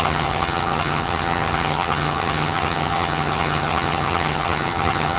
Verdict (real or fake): fake